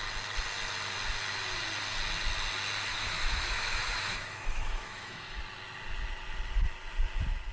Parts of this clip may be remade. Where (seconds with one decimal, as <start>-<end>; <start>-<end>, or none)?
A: 2.9-5.4